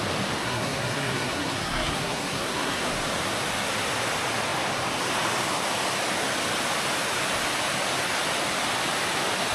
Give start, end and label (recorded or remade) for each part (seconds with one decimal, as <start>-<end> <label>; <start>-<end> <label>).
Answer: 0.0-0.4 recorded; 0.4-2.9 remade; 2.9-9.5 recorded